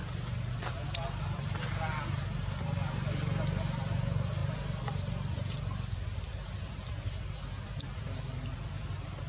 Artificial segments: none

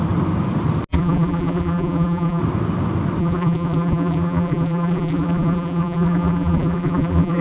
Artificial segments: 0.9-2.4; 3.2-7.4

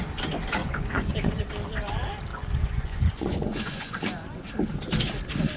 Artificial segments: 0.6-1.4; 2.3-4.5

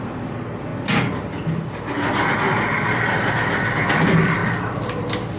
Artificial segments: none

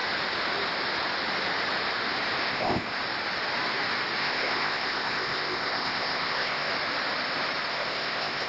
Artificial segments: 2.4-3.0; 4.2-6.7; 7.7-8.5

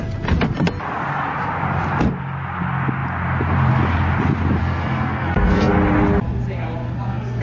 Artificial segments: 4.6-5.7; 6.8-7.4